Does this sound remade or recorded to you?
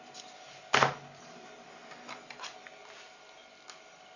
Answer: recorded